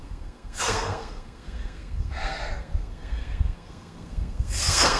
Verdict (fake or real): fake